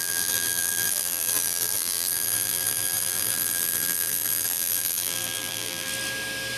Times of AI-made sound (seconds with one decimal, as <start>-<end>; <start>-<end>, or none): 0.0-5.9